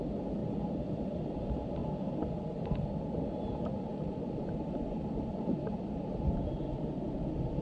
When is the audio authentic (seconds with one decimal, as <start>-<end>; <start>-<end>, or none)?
0.0-0.4; 1.4-7.6